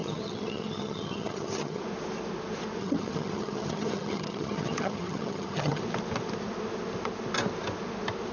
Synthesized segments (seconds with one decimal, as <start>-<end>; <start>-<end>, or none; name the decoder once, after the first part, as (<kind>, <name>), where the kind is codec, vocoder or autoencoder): 0.0-1.8 (vocoder, HiFi-GAN); 2.8-5.8